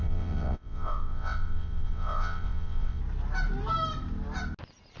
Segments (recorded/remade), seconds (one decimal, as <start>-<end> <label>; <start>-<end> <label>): 0.0-3.0 remade; 3.0-5.0 recorded